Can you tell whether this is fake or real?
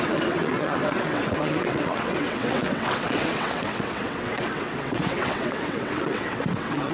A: fake